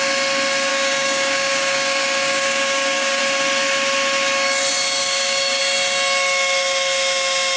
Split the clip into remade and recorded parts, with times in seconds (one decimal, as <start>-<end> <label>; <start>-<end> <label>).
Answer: 0.0-0.7 recorded; 0.7-3.2 remade; 3.2-5.0 recorded; 5.0-5.6 remade; 5.6-7.6 recorded